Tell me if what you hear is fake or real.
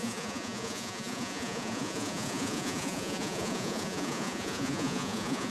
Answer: fake